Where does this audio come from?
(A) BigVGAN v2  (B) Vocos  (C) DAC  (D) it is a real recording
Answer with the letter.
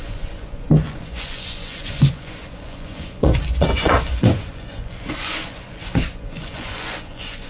B